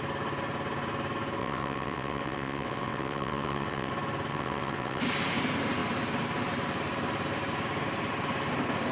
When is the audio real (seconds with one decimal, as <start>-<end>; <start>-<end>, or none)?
0.0-1.4; 3.9-4.3; 5.0-8.9